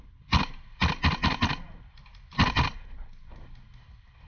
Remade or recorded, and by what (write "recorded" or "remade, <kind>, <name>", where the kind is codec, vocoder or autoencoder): recorded